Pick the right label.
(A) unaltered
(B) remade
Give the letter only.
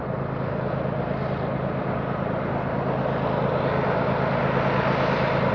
A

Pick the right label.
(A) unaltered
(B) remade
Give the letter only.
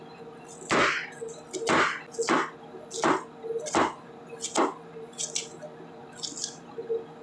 A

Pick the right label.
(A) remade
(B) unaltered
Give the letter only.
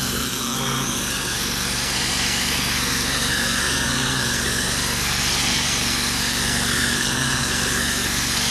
A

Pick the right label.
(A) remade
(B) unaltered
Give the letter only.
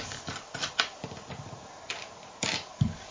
B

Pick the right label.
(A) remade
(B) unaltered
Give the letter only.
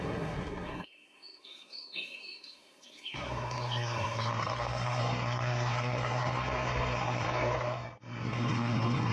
A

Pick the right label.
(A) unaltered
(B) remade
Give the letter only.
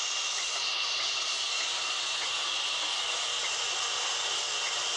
A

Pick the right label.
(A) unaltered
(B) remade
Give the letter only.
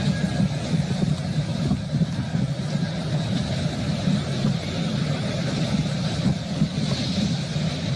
A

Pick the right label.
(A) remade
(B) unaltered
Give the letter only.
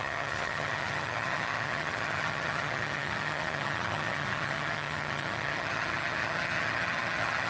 A